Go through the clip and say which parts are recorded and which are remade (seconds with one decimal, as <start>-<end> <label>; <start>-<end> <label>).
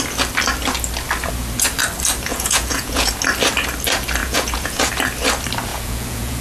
0.0-2.3 recorded; 2.3-3.1 remade; 3.1-4.2 recorded; 4.2-4.9 remade; 4.9-5.7 recorded; 5.7-6.4 remade